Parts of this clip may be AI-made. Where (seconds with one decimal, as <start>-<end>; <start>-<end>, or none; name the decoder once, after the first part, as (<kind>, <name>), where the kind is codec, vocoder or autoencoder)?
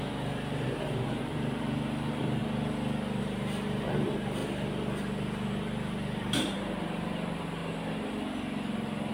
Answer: 0.0-2.4 (vocoder, BigVGAN v2); 3.2-4.4; 6.2-7.6